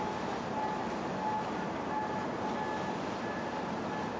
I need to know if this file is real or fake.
real